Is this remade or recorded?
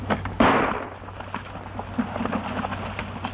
recorded